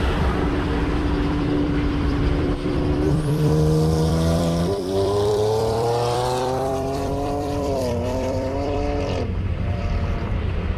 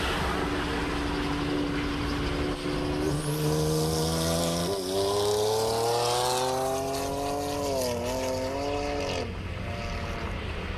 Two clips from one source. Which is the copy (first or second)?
first